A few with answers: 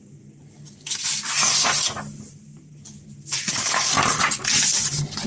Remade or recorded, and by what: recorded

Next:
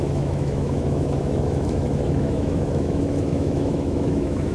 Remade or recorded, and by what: remade, autoencoder, DAC-VAE